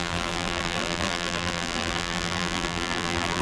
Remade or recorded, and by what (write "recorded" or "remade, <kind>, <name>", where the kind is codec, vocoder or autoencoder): remade, vocoder, BigVGAN v2